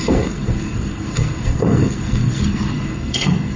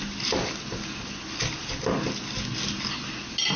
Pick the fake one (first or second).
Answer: first